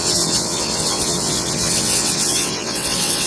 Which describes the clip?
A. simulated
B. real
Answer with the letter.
A